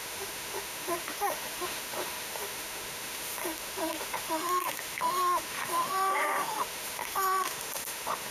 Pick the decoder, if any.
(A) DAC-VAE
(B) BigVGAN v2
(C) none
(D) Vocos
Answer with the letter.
A